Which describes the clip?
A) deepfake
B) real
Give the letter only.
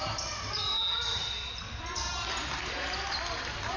B